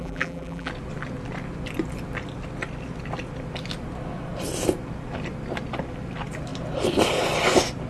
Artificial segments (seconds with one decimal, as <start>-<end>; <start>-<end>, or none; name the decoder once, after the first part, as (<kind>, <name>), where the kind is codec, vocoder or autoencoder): 0.0-0.7 (vocoder, BigVGAN v2)